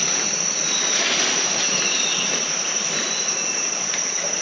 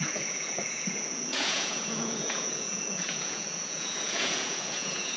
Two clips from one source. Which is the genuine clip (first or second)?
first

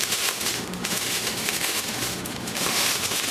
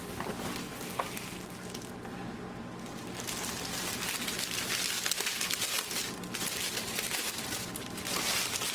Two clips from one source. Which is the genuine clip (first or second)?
second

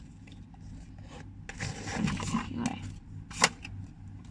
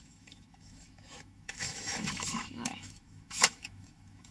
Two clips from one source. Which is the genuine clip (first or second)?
first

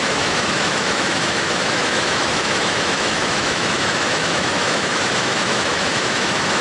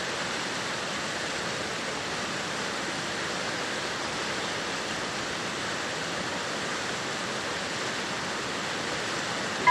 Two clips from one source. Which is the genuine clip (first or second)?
second